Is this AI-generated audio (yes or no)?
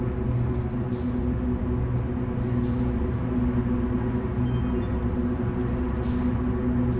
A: no